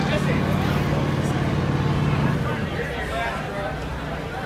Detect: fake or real real